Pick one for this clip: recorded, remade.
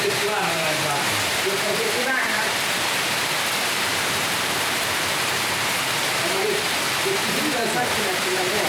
remade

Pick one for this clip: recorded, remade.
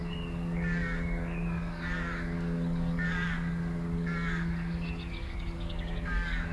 remade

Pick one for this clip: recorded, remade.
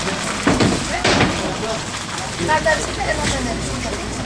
recorded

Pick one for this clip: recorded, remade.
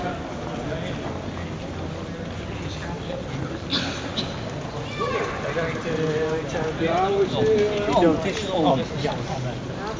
recorded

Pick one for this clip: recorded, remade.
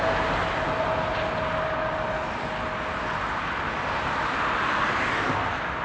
recorded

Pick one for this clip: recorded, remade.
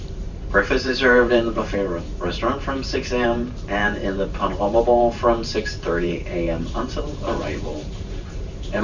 remade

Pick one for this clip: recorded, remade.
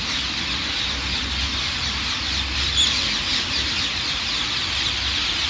recorded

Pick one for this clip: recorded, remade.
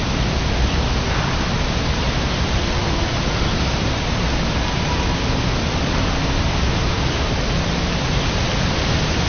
recorded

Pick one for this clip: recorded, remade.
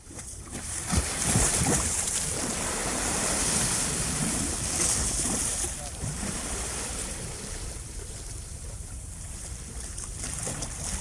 remade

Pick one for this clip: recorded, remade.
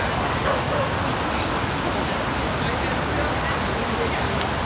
recorded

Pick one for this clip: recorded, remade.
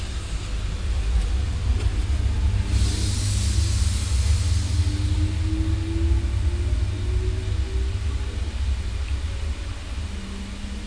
recorded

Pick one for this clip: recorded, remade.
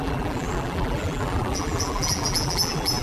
remade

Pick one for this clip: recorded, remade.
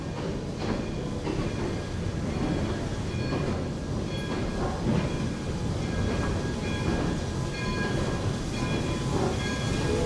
recorded